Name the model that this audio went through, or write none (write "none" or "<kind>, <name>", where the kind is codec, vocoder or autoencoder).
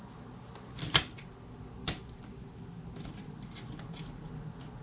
none